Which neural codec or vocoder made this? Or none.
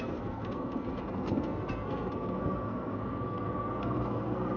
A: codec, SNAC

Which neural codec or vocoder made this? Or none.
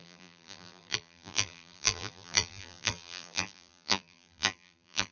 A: vocoder, BigVGAN v2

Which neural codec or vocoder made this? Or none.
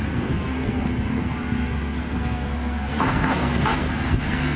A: codec, SNAC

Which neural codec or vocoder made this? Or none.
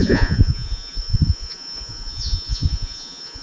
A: vocoder, Vocos